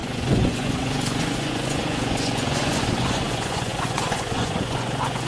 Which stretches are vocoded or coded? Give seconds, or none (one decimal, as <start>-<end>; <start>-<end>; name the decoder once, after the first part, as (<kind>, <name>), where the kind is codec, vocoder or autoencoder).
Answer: 0.0-5.3 (vocoder, Vocos)